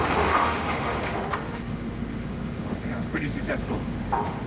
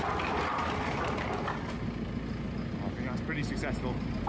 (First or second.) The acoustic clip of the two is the second